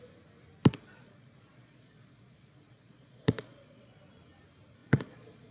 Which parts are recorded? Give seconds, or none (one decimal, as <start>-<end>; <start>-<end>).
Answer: 0.0-0.7; 4.0-4.8